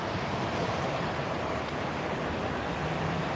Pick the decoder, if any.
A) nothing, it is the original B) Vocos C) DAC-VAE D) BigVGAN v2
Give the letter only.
A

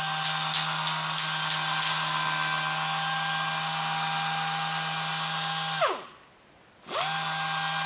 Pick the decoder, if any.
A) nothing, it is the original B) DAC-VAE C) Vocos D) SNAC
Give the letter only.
A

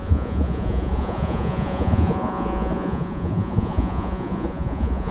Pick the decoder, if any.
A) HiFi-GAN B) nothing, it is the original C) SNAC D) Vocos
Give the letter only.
D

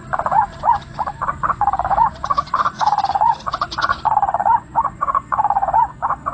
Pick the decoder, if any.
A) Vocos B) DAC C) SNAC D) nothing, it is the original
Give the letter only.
A